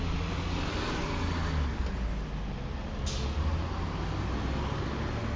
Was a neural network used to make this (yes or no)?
no